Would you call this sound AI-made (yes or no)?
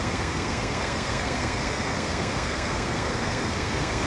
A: yes